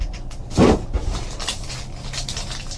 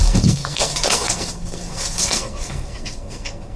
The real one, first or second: first